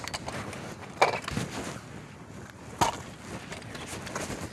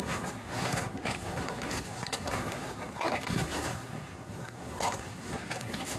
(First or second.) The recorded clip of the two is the first